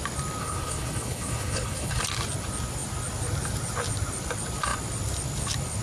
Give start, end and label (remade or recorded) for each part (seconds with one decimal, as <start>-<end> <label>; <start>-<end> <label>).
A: 0.0-0.4 recorded; 0.4-2.0 remade; 2.0-5.8 recorded